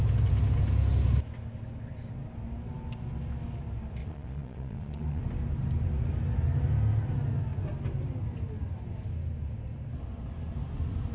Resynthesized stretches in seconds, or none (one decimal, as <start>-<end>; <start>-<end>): 4.0-5.2